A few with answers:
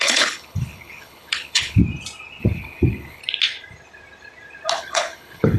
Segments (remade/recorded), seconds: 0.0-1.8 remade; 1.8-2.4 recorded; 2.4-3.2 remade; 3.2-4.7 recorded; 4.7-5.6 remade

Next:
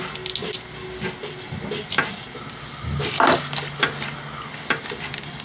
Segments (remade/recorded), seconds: 0.0-5.4 recorded

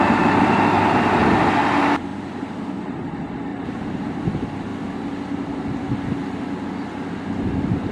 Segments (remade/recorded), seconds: 0.0-3.5 recorded; 3.5-4.2 remade; 4.2-7.9 recorded

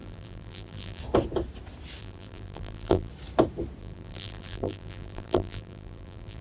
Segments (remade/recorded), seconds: 0.0-1.0 remade; 1.0-2.0 recorded; 2.0-3.1 remade; 3.1-3.8 recorded; 3.8-6.4 remade

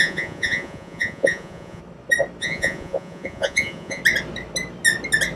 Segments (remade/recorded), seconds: 0.0-1.8 remade; 1.8-2.4 recorded; 2.4-4.0 remade; 4.0-5.4 recorded

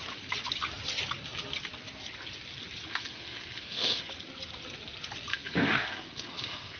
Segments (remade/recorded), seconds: 0.0-2.9 recorded; 2.9-4.1 remade; 4.1-5.3 recorded; 5.3-6.8 remade